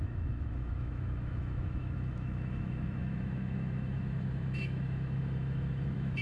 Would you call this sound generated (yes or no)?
yes